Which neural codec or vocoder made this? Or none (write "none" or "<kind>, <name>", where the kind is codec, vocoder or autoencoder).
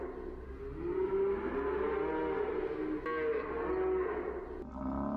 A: none